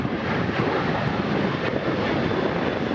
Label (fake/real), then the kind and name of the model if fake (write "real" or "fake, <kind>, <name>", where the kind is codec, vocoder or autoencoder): real